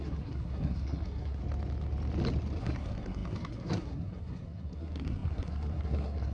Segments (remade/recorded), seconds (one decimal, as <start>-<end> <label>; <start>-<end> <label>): 0.0-1.4 remade; 1.4-2.6 recorded; 2.6-6.3 remade